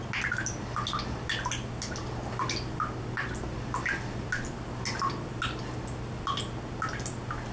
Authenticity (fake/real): real